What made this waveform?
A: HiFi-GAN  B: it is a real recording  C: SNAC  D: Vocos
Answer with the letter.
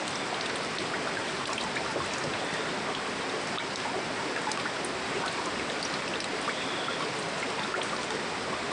B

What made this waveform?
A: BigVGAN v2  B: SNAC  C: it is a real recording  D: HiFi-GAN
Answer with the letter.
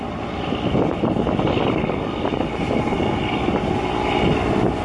C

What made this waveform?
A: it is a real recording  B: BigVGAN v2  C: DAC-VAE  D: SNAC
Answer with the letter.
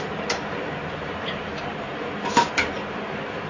B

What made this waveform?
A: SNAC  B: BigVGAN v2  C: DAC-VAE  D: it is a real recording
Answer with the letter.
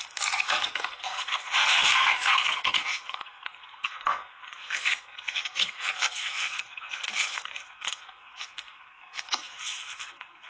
A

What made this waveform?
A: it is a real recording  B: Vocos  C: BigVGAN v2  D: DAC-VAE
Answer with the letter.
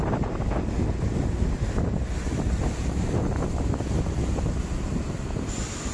A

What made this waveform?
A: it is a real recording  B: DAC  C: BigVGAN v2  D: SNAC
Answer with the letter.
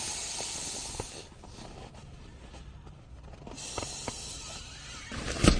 A